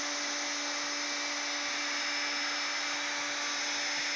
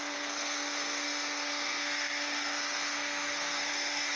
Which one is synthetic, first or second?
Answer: second